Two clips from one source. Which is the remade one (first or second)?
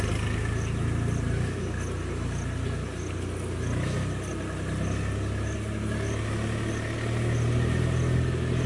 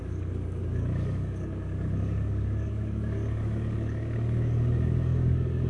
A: second